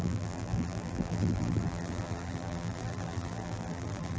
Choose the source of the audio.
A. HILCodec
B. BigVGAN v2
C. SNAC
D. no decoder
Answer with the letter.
B